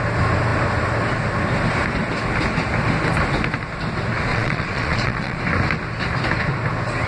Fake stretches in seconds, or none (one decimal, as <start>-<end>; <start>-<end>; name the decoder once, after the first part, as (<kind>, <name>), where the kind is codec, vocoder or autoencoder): 4.3-5.4 (vocoder, Vocos)